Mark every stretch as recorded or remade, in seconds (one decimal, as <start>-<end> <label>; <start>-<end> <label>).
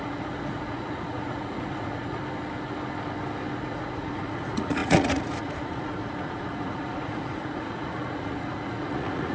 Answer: 0.0-2.2 remade; 2.2-3.6 recorded; 3.6-9.3 remade